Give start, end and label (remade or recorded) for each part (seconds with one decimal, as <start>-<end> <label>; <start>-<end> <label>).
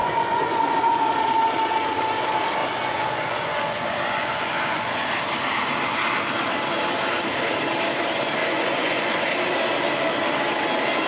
0.0-1.1 remade; 1.1-2.6 recorded; 2.6-5.1 remade; 5.1-8.4 recorded; 8.4-9.3 remade; 9.3-11.1 recorded